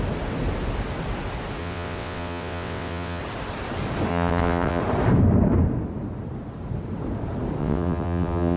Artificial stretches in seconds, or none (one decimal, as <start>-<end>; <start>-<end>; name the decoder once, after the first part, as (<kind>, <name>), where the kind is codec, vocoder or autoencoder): 1.6-3.2 (vocoder, WaveNeXt); 4.1-4.8; 7.6-8.6